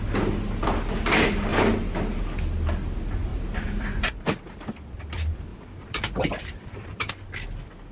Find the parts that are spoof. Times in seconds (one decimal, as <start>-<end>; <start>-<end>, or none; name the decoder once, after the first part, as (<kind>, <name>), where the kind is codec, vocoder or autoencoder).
1.5-2.2 (vocoder, BigVGAN v2); 3.3-4.2; 5.5-7.1